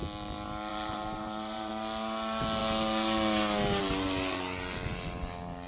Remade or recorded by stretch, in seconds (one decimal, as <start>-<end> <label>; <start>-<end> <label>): 0.0-0.7 recorded; 0.7-1.7 remade; 1.7-5.7 recorded